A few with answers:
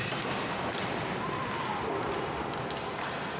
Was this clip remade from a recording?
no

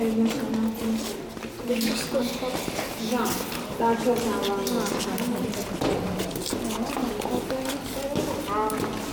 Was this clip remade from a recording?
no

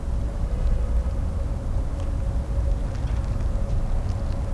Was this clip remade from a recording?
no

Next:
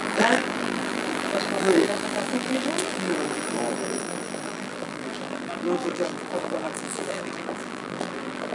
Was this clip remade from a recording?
yes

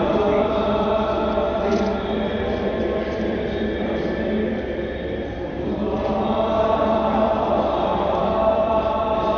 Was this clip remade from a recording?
yes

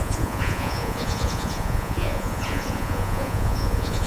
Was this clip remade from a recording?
yes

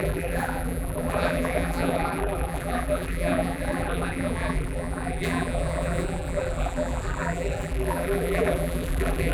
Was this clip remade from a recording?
yes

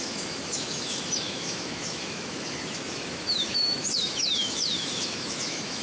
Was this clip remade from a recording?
yes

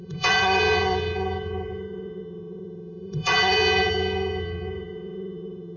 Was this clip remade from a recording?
yes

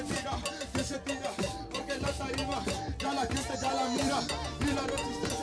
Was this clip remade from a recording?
no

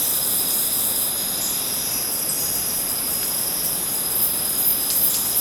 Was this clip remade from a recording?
no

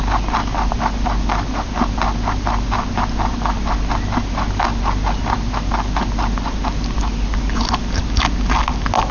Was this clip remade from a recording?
no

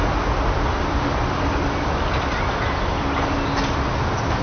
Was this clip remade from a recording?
no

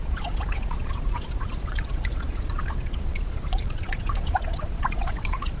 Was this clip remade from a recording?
yes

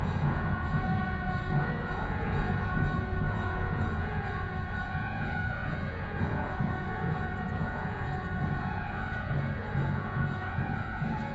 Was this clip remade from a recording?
yes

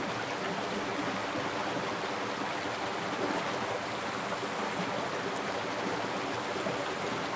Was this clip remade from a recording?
no